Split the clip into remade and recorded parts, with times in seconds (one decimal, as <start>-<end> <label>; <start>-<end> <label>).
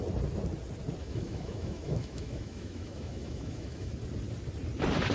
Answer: 0.0-1.0 recorded; 1.0-3.9 remade; 3.9-5.1 recorded